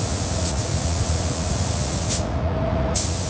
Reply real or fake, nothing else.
fake